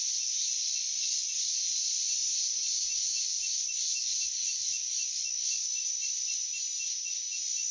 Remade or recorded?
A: recorded